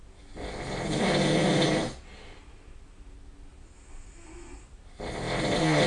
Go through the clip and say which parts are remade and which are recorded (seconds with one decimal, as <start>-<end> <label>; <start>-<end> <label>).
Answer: 0.0-5.9 recorded